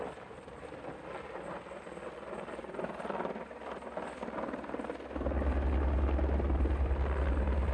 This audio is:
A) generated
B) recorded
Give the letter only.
B